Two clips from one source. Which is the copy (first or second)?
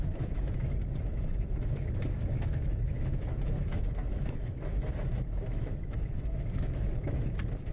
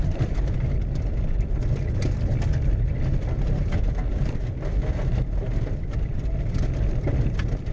first